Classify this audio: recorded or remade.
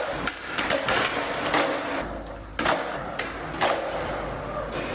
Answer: recorded